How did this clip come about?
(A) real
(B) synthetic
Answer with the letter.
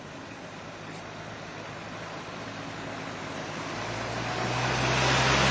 A